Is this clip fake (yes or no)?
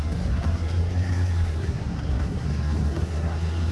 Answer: yes